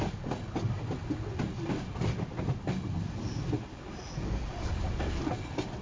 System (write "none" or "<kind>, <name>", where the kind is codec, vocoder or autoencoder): none